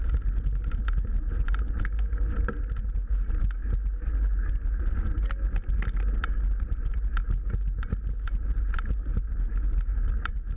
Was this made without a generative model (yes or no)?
yes